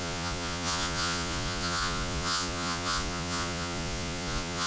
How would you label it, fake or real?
fake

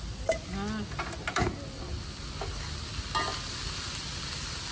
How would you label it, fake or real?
real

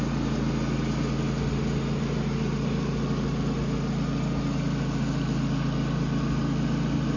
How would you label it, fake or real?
real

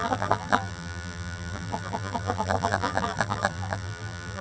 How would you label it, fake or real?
fake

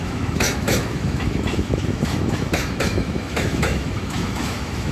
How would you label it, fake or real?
fake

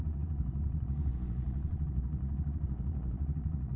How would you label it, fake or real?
fake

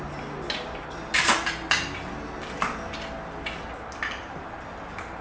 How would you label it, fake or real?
real